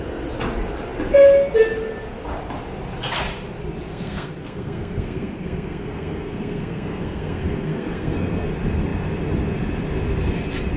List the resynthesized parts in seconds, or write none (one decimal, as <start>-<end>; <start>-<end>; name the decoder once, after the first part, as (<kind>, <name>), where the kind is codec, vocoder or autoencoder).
3.9-8.5 (codec, SNAC)